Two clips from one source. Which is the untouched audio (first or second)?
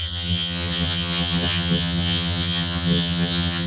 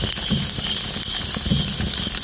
second